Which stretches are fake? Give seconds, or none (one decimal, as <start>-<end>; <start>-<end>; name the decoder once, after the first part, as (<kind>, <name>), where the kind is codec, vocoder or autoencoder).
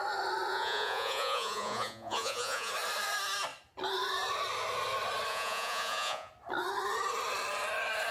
0.5-2.7 (vocoder, Vocos); 5.3-6.3